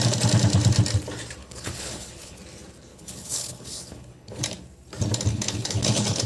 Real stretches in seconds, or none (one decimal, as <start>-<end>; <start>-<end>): 0.0-1.4; 2.4-2.9; 4.4-5.3